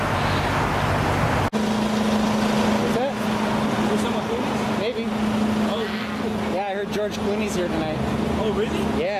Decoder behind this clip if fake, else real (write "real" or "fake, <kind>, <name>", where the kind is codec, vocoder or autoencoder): real